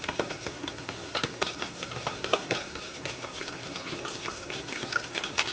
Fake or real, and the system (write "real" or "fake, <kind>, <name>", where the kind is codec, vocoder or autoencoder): fake, codec, SNAC